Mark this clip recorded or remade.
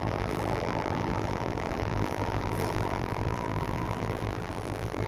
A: remade